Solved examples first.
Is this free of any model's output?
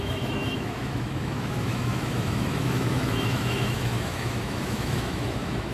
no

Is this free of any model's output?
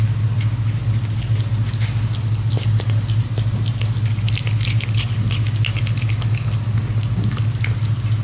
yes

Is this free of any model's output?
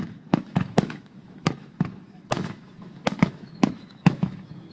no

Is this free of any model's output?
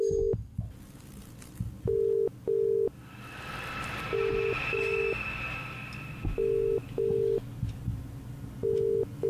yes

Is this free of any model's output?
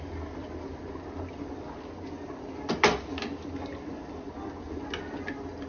yes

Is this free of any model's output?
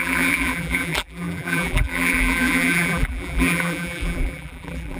no